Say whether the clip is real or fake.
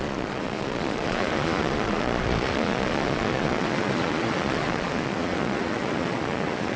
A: fake